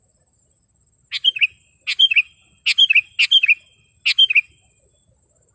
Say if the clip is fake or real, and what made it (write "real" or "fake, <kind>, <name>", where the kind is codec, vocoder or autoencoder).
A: real